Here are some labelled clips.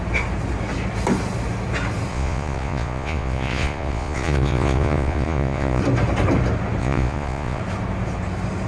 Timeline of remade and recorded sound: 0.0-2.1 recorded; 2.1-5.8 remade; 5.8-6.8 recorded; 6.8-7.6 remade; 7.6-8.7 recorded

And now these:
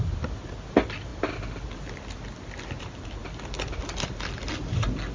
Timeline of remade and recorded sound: 0.0-5.1 recorded

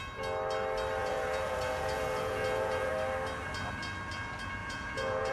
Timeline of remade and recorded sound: 0.0-1.0 recorded; 1.0-2.9 remade; 2.9-4.6 recorded; 4.6-5.3 remade

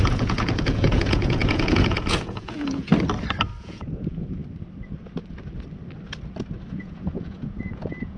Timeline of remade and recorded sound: 0.0-2.9 remade; 2.9-3.6 recorded; 3.6-4.4 remade; 4.4-6.7 recorded; 6.7-8.2 remade

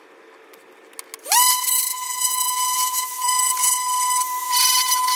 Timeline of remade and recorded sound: 0.0-1.9 recorded; 1.9-3.7 remade; 3.7-4.4 recorded; 4.4-5.2 remade

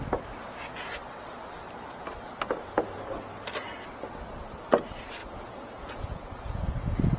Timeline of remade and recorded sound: 0.0-5.2 recorded; 5.2-7.2 remade

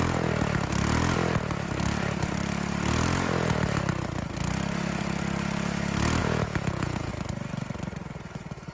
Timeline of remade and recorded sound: 0.0-6.2 recorded; 6.2-7.1 remade; 7.1-8.7 recorded

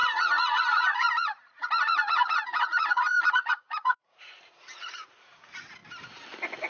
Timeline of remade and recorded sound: 0.0-5.8 remade; 5.8-6.7 recorded